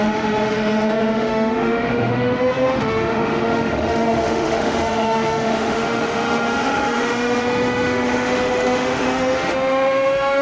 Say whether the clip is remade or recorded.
remade